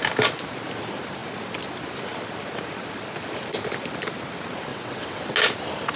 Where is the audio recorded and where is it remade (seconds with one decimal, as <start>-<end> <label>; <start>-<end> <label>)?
0.0-4.7 recorded; 4.7-5.2 remade; 5.2-6.0 recorded